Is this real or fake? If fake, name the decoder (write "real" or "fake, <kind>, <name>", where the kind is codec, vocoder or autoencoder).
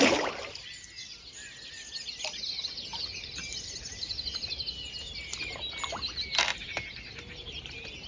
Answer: real